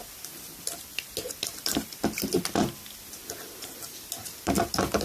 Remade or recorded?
remade